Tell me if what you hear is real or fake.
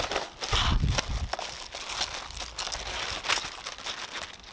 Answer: real